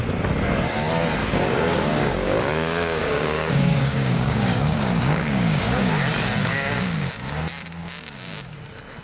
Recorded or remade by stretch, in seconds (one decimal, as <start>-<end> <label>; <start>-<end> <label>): 0.0-1.2 recorded; 1.2-5.9 remade; 5.9-6.5 recorded; 6.5-7.1 remade; 7.1-7.8 recorded; 7.8-8.6 remade; 8.6-9.0 recorded